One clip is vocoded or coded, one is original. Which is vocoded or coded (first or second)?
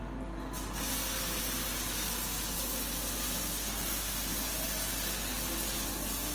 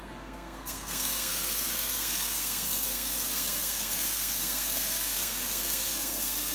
second